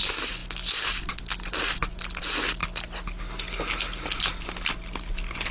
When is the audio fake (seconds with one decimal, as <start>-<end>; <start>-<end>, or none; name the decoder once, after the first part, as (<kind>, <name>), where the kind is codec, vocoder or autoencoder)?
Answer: none